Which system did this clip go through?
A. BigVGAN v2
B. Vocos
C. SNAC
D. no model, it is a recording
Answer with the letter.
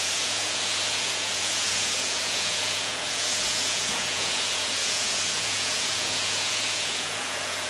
B